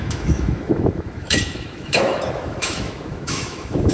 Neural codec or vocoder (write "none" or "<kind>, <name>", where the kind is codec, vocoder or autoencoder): autoencoder, DAC-VAE